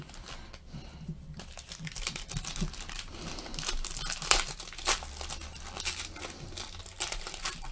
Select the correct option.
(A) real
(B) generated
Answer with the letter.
A